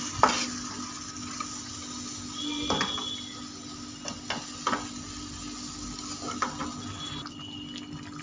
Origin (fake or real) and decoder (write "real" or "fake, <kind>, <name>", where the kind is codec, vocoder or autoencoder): real